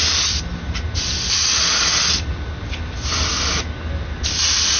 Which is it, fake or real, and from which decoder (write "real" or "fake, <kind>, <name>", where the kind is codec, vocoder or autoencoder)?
real